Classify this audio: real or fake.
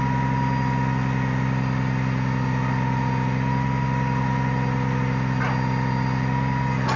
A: real